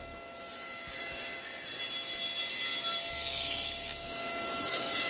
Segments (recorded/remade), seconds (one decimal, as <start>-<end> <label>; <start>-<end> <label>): 0.0-0.8 remade; 0.8-4.3 recorded; 4.3-5.1 remade

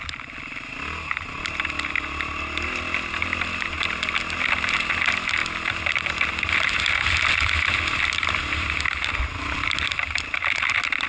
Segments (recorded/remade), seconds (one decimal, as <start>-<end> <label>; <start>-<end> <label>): 0.0-11.1 recorded

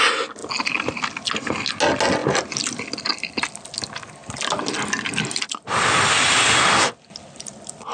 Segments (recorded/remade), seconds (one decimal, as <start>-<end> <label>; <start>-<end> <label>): 0.0-7.9 recorded